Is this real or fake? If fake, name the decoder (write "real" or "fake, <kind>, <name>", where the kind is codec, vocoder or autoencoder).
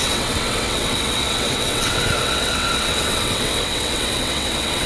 fake, vocoder, WaveNeXt